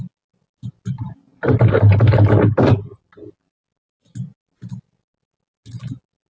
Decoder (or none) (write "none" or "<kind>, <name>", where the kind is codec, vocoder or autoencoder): none